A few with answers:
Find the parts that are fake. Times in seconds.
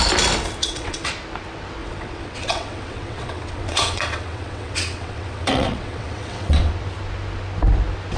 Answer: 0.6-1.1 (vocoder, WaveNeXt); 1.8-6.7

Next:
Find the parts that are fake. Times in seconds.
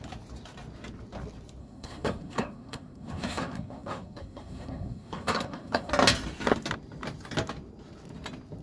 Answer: 1.6-5.9 (codec, SNAC)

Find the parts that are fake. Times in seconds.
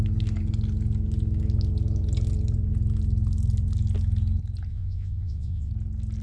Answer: 4.7-5.7 (vocoder, Vocos)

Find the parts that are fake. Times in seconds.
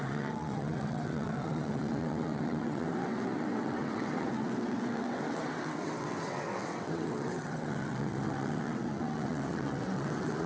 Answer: 0.0-10.5 (vocoder, WaveNeXt)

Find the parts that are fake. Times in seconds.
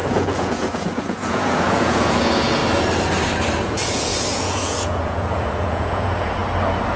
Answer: 0.0-2.6 (vocoder, Vocos); 3.6-6.4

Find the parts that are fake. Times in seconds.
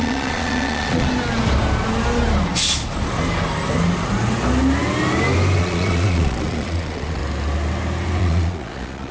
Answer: 0.0-1.1 (vocoder, Vocos); 5.6-7.2; 8.2-9.1